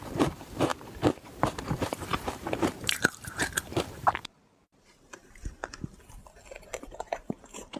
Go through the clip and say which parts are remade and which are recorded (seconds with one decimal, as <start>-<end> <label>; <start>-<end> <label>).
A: 0.0-0.7 remade; 0.7-1.3 recorded; 1.3-5.6 remade; 5.6-6.8 recorded; 6.8-7.8 remade